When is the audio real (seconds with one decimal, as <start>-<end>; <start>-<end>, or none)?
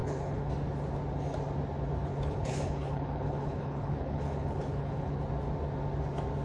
0.5-2.1; 5.2-6.4